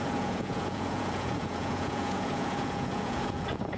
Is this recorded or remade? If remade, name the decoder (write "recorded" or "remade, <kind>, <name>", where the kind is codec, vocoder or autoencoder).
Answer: remade, vocoder, Vocos